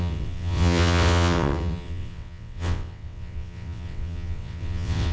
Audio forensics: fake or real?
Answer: fake